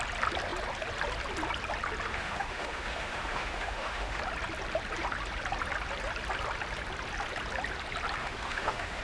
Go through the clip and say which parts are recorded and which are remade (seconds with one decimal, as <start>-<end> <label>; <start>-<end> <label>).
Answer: 0.0-2.1 recorded; 2.1-4.2 remade; 4.2-8.2 recorded; 8.2-9.0 remade